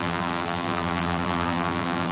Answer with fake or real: fake